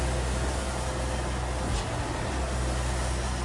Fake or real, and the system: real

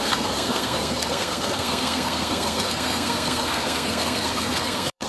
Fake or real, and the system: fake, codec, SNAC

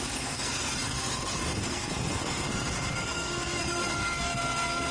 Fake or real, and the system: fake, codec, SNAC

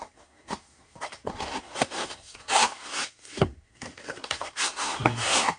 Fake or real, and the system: fake, codec, SNAC